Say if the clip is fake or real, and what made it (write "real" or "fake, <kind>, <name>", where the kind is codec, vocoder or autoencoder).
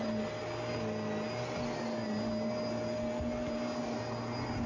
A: real